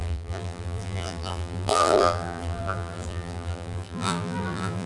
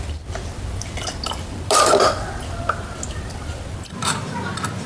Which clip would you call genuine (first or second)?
second